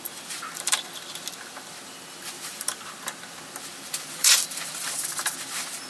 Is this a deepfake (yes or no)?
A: yes